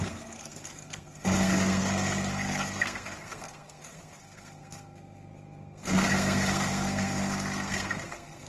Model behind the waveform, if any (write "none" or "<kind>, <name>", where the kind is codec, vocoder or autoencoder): codec, SNAC